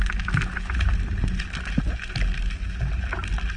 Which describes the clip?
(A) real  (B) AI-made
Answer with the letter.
A